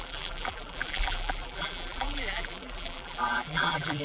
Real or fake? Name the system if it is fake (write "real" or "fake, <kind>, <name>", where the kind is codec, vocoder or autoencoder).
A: fake, vocoder, BigVGAN v2